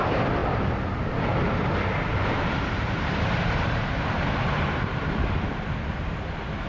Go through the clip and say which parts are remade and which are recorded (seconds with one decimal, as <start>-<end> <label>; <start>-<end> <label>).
0.0-2.1 recorded; 2.1-5.6 remade; 5.6-6.7 recorded